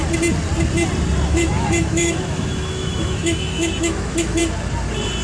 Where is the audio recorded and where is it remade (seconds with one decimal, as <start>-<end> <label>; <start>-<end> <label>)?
0.0-1.3 recorded; 1.3-4.4 remade; 4.4-5.2 recorded